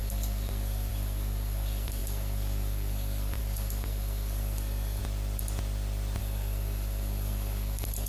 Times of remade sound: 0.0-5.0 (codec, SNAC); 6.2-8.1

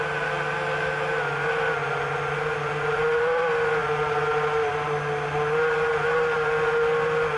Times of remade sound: none

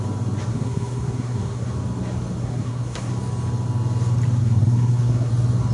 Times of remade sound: 0.5-1.7 (codec, SNAC); 2.4-3.1; 4.4-5.3

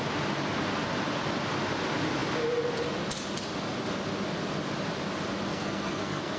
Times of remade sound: 5.5-6.4 (codec, SNAC)

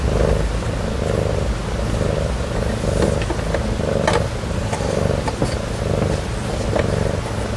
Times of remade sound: none

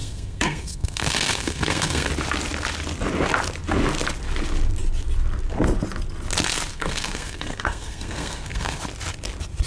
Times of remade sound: 0.0-2.1 (codec, SNAC); 6.7-8.8

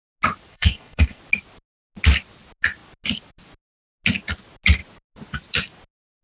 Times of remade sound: 0.5-1.2 (codec, SNAC)